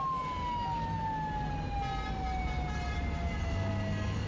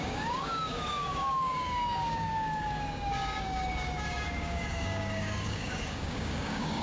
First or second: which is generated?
second